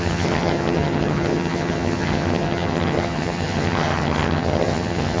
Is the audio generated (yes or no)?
yes